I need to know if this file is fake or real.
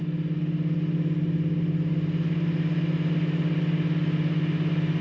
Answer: real